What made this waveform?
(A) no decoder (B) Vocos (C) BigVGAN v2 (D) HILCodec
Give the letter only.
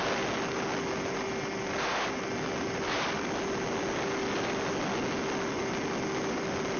A